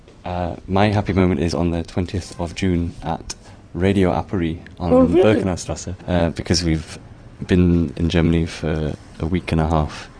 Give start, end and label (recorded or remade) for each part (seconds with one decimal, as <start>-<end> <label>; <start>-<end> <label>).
0.0-1.2 recorded; 1.2-3.5 remade; 3.5-5.2 recorded; 5.2-5.7 remade; 5.7-6.2 recorded; 6.2-10.2 remade